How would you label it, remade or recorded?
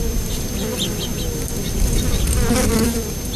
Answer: recorded